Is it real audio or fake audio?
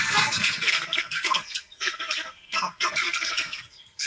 fake